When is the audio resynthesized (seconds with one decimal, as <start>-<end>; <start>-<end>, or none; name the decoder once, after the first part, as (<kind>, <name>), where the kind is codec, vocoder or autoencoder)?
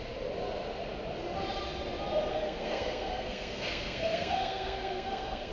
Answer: 2.3-5.5 (codec, SNAC)